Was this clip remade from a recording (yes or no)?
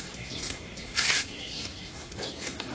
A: yes